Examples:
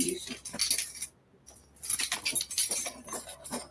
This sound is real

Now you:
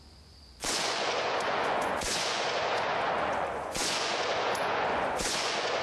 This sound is fake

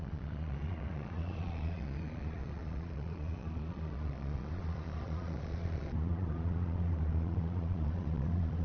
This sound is fake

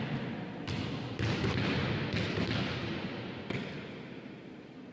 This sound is real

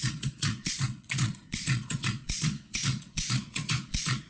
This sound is fake